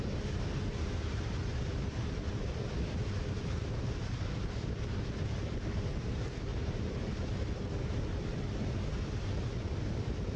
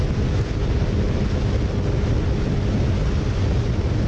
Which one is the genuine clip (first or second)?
second